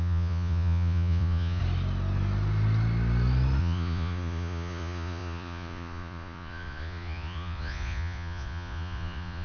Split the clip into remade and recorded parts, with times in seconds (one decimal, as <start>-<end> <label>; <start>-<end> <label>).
0.0-1.6 remade; 1.6-3.6 recorded; 3.6-9.4 remade